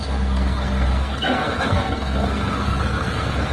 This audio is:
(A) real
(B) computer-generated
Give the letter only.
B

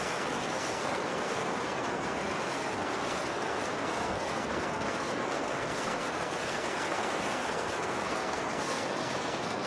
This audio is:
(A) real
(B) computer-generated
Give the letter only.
B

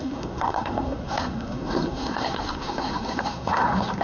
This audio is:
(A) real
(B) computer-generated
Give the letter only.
B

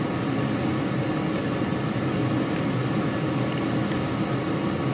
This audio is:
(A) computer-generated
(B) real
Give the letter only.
B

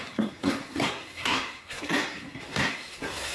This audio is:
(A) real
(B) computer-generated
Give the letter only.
B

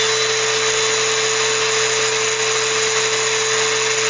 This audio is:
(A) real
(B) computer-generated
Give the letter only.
A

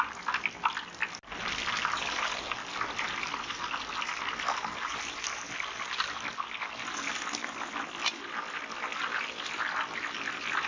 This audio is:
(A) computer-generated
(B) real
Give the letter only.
B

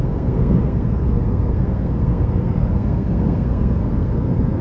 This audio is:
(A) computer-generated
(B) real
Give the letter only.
A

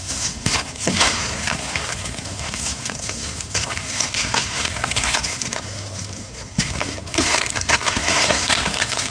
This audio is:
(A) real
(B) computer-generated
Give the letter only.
B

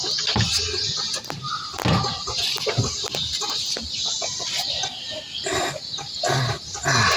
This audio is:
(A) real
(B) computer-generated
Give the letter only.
A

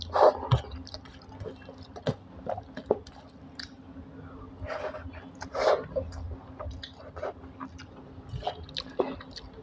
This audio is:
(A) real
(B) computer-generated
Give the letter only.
A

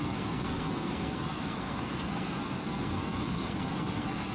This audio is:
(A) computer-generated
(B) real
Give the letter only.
A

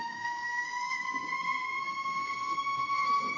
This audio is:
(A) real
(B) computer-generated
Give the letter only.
B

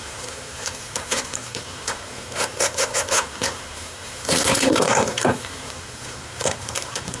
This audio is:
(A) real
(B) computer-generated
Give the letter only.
B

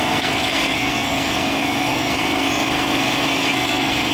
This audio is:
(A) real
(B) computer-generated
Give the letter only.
B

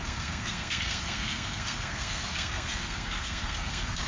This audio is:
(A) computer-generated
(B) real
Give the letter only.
A